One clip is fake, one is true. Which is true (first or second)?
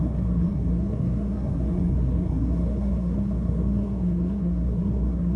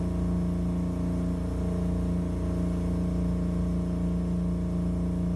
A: second